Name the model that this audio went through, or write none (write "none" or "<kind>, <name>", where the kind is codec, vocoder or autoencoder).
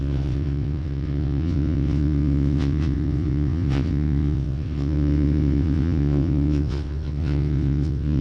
vocoder, WaveNeXt